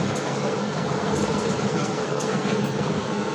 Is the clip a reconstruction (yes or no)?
yes